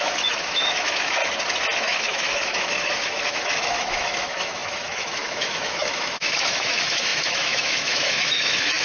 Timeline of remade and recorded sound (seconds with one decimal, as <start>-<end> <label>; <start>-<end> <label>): 0.0-1.2 remade; 1.2-1.8 recorded; 1.8-8.8 remade